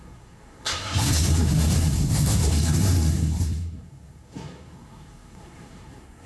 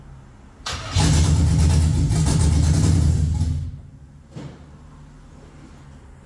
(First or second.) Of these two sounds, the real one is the second